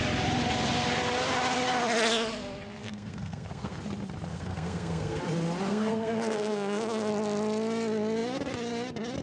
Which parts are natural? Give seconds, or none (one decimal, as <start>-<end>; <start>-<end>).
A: 0.0-2.8; 3.8-4.3; 5.2-5.7; 7.1-9.2